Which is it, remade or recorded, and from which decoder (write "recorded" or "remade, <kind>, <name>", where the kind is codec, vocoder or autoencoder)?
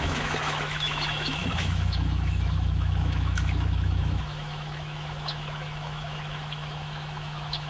remade, autoencoder, DAC-VAE